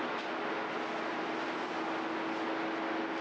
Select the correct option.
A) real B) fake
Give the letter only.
A